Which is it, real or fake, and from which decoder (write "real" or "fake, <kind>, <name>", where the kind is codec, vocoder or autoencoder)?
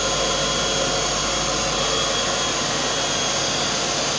real